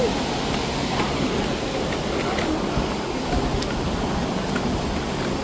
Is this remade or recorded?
recorded